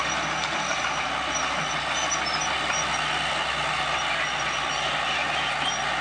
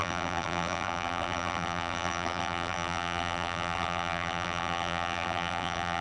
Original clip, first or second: first